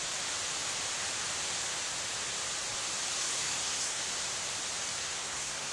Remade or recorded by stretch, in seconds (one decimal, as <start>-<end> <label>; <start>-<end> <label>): 0.0-3.2 recorded; 3.2-4.0 remade; 4.0-5.0 recorded; 5.0-5.7 remade